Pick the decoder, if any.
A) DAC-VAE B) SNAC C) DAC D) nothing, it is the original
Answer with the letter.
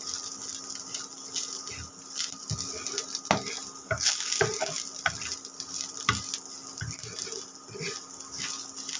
D